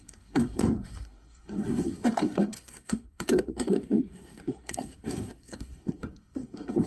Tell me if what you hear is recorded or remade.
remade